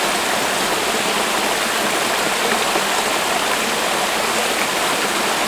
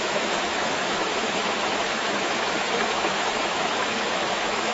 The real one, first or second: first